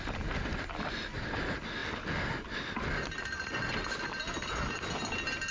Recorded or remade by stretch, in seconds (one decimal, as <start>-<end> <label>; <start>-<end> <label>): 0.0-5.5 recorded